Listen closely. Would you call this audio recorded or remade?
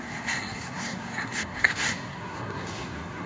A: remade